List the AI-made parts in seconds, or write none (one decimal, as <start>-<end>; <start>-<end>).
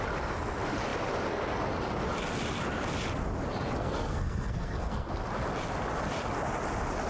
3.8-5.1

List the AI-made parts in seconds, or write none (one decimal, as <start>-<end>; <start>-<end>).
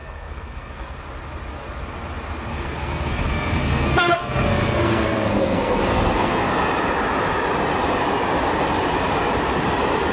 0.0-1.0; 2.5-6.5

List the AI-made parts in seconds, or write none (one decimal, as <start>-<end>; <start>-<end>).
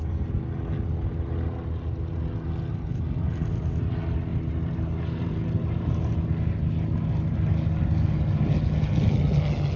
4.3-6.1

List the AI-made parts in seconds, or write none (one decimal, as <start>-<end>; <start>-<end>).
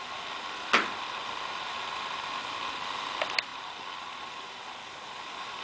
none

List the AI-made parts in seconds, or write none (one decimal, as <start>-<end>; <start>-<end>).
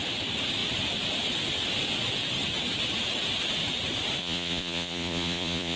4.2-5.8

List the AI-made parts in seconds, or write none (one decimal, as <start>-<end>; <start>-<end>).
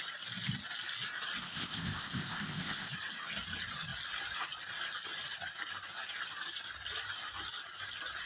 1.4-2.9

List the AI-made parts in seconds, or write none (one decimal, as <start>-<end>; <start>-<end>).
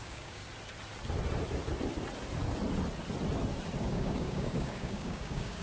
0.0-0.4; 3.8-5.6